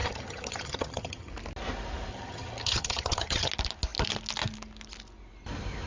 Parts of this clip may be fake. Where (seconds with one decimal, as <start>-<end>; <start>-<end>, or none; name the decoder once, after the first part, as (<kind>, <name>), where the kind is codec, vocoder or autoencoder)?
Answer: 0.0-1.3 (vocoder, HiFi-GAN); 2.1-3.5